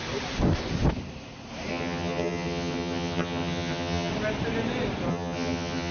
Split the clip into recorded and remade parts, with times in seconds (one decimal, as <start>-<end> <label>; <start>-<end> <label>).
0.0-1.7 recorded; 1.7-4.1 remade; 4.1-5.1 recorded; 5.1-5.9 remade